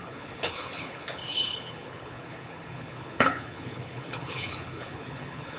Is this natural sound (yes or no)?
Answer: no